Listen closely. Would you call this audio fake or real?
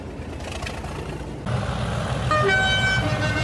real